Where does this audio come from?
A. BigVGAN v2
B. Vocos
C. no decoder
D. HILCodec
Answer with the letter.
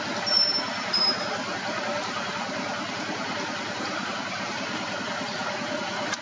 C